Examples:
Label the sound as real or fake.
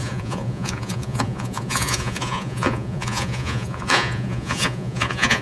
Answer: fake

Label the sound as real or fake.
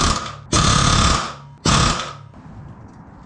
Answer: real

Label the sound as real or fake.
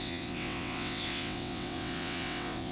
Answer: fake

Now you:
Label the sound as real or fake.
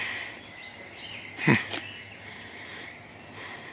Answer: real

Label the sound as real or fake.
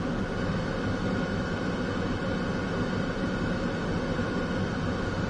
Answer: real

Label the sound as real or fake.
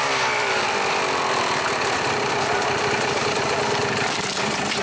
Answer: fake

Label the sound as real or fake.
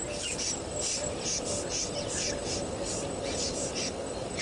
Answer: real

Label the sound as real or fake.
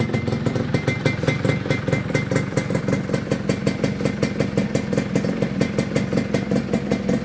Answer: real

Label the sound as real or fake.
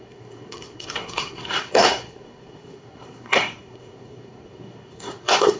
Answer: fake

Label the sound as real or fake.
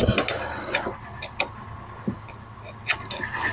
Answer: real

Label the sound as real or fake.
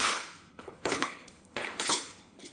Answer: fake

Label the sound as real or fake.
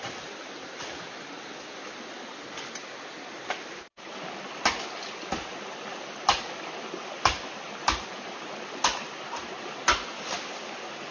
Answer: real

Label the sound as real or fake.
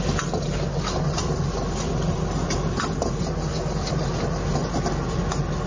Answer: real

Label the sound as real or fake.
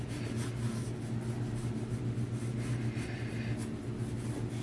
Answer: real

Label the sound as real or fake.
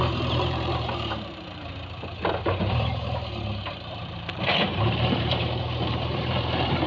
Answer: fake